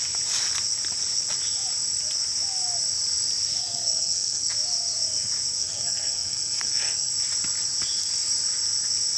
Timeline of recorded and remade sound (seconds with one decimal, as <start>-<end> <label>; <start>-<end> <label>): 0.0-3.6 recorded; 3.6-4.5 remade; 4.5-5.6 recorded; 5.6-7.1 remade; 7.1-9.2 recorded